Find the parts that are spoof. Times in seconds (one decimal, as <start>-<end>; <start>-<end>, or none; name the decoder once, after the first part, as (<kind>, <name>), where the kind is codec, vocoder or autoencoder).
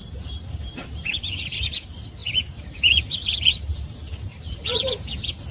none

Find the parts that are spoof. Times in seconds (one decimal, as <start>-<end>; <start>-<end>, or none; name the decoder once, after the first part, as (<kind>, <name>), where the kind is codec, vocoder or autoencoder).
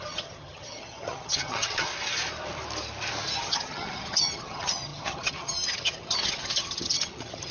0.0-1.9 (vocoder, HiFi-GAN); 3.4-7.5